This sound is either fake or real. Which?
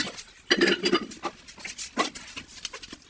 real